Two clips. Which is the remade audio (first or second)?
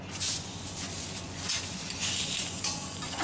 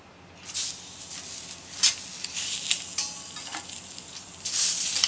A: first